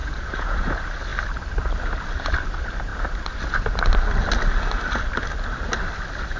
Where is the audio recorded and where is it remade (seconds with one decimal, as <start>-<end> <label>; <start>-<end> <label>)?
0.0-0.7 remade; 0.7-6.4 recorded

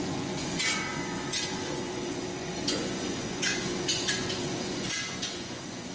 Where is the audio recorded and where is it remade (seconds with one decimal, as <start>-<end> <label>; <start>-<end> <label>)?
0.0-5.9 remade

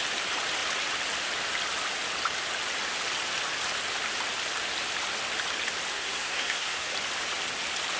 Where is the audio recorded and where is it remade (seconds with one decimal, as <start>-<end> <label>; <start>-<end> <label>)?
0.0-5.9 recorded; 5.9-6.9 remade; 6.9-8.0 recorded